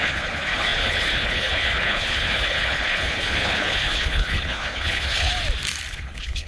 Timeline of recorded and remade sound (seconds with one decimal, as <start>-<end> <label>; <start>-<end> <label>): 0.0-5.3 remade; 5.3-5.9 recorded; 5.9-6.5 remade

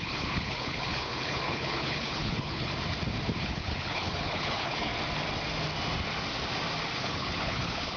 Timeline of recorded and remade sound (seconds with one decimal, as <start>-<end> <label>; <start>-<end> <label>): 0.0-2.7 remade; 2.7-3.4 recorded; 3.4-4.9 remade; 4.9-7.0 recorded; 7.0-8.0 remade

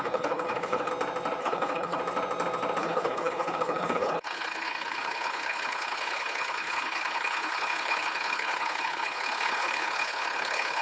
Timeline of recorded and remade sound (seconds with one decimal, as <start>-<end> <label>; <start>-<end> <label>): 0.0-0.9 remade; 0.9-1.4 recorded; 1.4-2.0 remade; 2.0-2.8 recorded; 2.8-10.8 remade

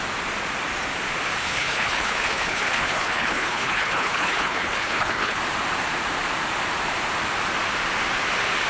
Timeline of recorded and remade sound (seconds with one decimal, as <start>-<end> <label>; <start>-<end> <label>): 0.0-1.4 recorded; 1.4-5.4 remade; 5.4-8.7 recorded

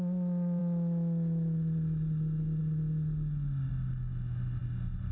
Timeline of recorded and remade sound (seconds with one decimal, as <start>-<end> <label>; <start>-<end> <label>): 0.0-5.1 recorded